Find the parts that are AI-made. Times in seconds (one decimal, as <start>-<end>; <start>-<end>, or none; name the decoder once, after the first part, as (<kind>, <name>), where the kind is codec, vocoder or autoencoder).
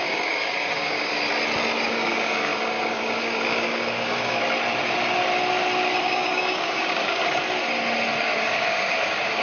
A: 0.0-1.1 (codec, DAC); 1.9-4.4; 6.0-7.2; 8.2-9.4